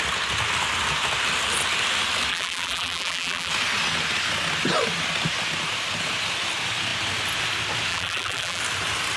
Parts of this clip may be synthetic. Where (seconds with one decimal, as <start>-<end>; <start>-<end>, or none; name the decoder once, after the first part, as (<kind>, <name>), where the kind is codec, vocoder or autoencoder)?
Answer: 2.3-3.5 (vocoder, BigVGAN v2); 7.9-8.6

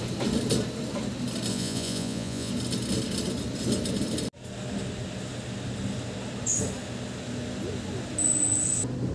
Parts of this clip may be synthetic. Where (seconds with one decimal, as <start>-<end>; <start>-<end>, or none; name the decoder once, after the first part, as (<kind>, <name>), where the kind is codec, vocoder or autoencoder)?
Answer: 1.5-2.5 (vocoder, Vocos)

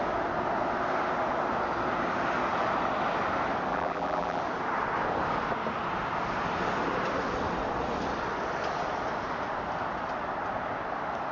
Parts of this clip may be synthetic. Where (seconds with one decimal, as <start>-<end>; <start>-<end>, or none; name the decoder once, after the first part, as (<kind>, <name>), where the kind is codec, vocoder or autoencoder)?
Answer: 3.7-4.4 (vocoder, BigVGAN v2)

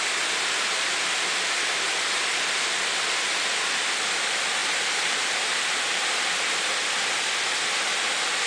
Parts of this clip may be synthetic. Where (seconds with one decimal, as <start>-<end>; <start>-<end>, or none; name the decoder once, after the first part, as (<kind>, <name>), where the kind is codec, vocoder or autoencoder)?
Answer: none

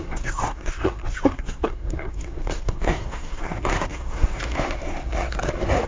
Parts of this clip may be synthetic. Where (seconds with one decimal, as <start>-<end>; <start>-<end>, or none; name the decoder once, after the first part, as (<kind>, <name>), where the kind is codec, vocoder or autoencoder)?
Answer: 0.0-5.9 (codec, SNAC)